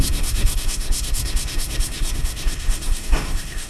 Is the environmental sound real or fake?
fake